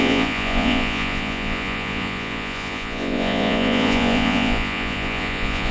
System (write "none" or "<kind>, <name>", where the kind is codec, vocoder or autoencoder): vocoder, Vocos